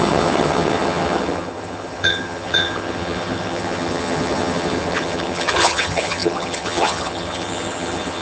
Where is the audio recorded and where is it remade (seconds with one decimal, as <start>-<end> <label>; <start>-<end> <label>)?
0.0-8.2 remade